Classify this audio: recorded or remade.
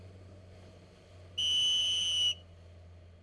recorded